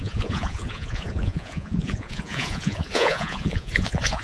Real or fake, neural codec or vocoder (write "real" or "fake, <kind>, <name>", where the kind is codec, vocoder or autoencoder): fake, vocoder, Vocos